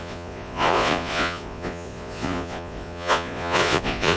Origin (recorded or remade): remade